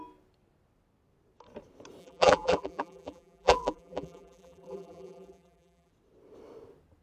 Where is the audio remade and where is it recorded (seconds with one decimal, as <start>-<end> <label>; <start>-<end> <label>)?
0.0-2.0 recorded; 2.0-5.9 remade; 5.9-7.0 recorded